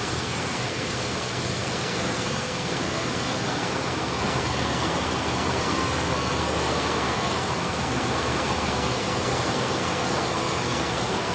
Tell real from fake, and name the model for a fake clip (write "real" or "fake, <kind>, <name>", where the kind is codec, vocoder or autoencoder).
fake, codec, SNAC